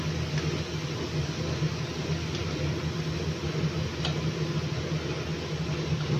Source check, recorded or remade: recorded